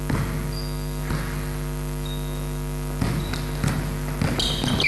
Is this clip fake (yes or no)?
no